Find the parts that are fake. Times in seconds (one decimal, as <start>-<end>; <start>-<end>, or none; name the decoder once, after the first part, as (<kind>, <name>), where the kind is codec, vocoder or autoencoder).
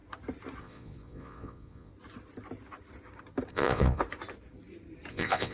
0.6-1.9 (vocoder, Vocos); 3.5-4.0; 5.1-5.5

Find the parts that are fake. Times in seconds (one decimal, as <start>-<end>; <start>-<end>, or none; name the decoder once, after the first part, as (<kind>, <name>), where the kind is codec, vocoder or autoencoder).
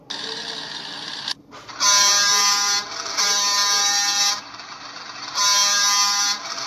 none